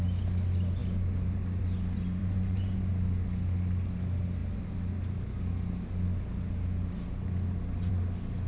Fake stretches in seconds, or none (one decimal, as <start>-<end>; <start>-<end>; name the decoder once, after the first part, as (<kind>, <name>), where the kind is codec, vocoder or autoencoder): 2.2-2.9 (vocoder, Vocos)